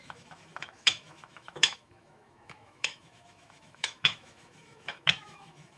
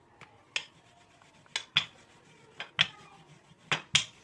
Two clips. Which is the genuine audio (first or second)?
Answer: second